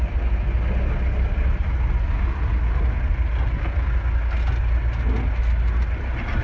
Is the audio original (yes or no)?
yes